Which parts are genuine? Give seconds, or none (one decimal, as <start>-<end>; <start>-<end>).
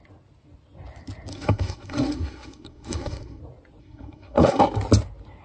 0.0-1.3; 3.4-3.8; 4.6-5.4